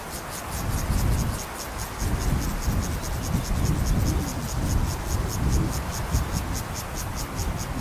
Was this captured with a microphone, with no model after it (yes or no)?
yes